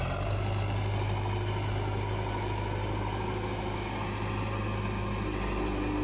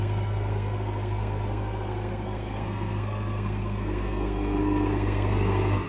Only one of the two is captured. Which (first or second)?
first